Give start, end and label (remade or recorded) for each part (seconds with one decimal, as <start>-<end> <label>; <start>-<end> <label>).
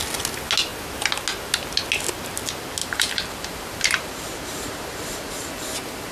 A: 0.0-2.8 recorded; 2.8-6.1 remade